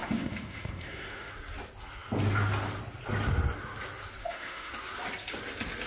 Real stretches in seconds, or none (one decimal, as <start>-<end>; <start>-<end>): 1.3-4.2; 4.7-5.9